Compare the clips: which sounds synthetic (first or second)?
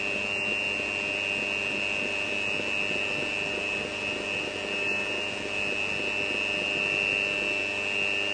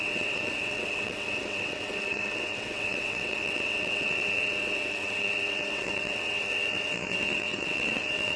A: second